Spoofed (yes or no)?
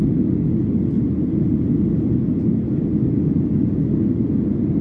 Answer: no